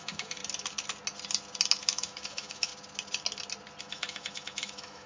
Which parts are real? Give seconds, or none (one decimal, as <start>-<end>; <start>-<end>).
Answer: 0.4-1.8; 2.7-3.8